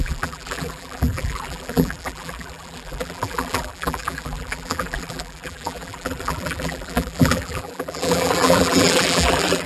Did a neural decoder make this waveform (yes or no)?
yes